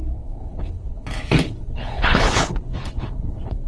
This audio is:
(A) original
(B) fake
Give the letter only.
B